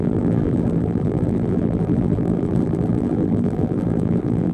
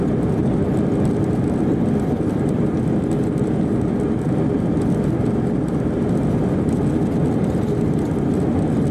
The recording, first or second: second